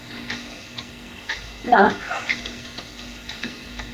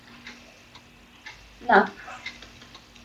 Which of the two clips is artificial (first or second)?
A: first